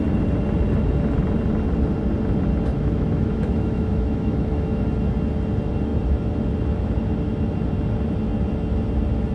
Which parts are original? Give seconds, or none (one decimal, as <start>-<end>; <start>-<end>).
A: 0.0-2.7; 4.8-9.3